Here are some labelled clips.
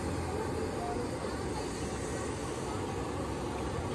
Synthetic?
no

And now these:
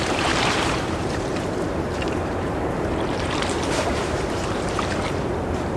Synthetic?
yes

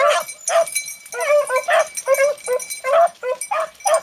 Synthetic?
no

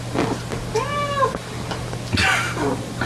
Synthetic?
no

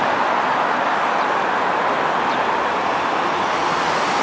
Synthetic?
no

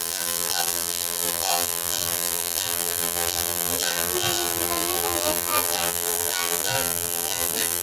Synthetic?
yes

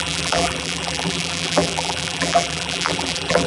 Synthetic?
yes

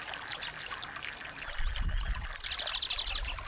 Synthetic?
no